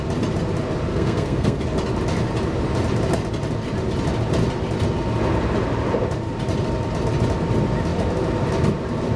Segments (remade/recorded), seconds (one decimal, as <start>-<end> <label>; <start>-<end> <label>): 0.0-0.9 recorded; 0.9-1.6 remade; 1.6-9.2 recorded